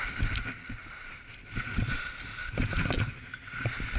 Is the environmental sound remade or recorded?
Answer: recorded